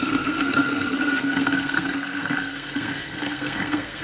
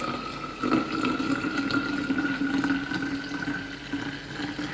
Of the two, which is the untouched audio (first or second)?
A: second